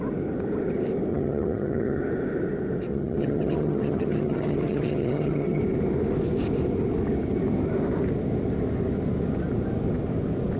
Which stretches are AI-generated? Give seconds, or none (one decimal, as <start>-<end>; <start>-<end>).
1.1-2.0; 2.9-5.6